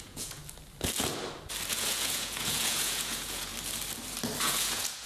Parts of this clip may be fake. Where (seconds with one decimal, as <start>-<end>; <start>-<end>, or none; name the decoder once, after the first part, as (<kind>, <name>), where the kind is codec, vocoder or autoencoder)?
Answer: 0.0-0.4 (vocoder, Vocos); 1.7-3.5; 4.4-5.1